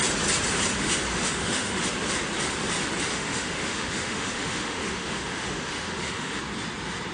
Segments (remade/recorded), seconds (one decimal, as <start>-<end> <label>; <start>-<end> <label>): 0.0-1.1 recorded; 1.1-1.9 remade; 1.9-3.1 recorded; 3.1-6.4 remade; 6.4-7.1 recorded